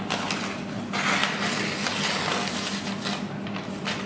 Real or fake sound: real